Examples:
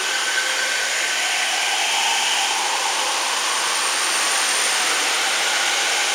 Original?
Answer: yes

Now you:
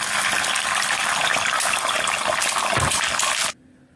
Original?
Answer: no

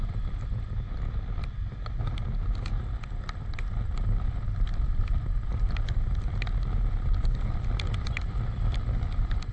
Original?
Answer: yes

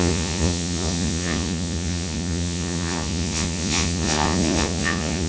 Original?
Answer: no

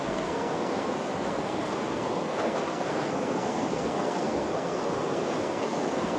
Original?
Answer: no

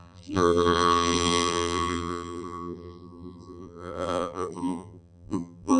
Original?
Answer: no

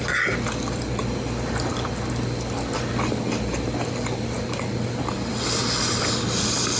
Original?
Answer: yes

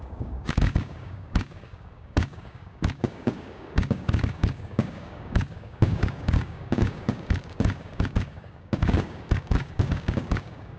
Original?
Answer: no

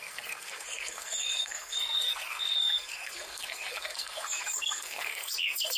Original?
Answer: no